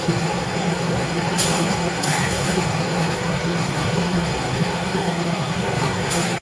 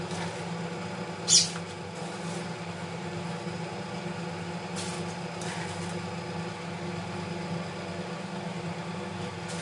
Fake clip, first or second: first